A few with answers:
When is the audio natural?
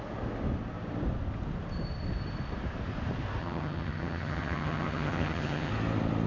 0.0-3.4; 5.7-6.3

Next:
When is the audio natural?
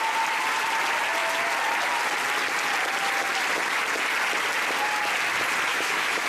0.0-5.7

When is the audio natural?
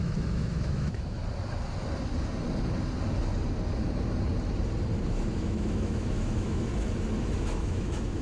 1.2-5.3; 6.7-7.2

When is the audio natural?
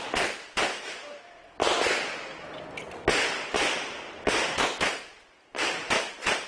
0.0-6.5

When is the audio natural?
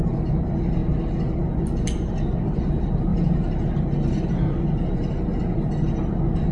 0.0-6.5